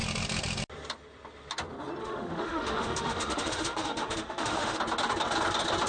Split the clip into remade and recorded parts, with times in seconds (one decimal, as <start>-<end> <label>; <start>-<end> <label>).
0.0-2.0 recorded; 2.0-4.8 remade; 4.8-5.9 recorded